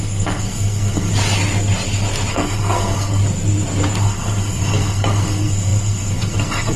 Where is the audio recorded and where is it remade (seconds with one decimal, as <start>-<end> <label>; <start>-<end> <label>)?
0.0-1.1 remade; 1.1-2.3 recorded; 2.3-3.2 remade; 3.2-4.0 recorded; 4.0-6.8 remade